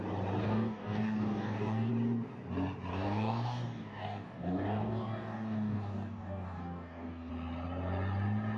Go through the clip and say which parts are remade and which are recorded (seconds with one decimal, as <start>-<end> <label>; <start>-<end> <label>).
0.0-0.4 recorded; 0.4-1.9 remade; 1.9-2.9 recorded; 2.9-7.3 remade; 7.3-8.6 recorded